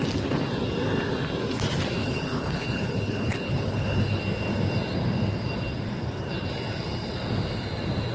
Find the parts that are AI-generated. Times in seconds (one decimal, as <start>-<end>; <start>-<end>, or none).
2.0-4.2